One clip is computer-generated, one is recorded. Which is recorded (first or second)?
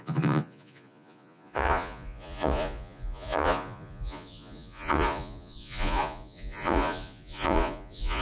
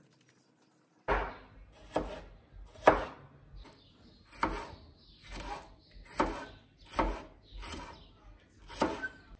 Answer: second